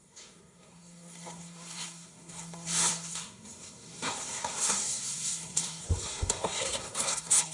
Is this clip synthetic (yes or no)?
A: yes